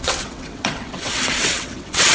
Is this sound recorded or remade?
remade